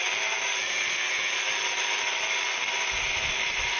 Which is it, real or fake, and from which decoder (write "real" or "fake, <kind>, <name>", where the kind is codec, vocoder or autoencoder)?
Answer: real